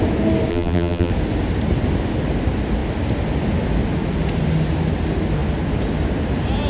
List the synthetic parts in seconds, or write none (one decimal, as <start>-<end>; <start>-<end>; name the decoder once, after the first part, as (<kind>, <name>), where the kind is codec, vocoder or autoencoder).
0.5-1.1 (vocoder, BigVGAN v2)